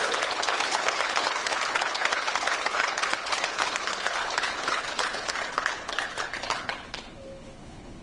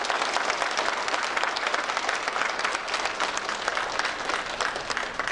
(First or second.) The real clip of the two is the second